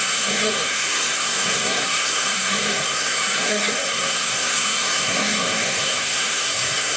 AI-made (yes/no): yes